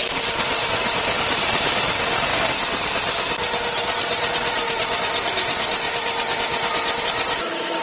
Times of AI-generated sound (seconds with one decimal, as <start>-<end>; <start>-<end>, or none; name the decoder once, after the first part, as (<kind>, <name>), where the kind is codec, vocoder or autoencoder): 1.3-2.3 (vocoder, BigVGAN v2); 7.0-7.8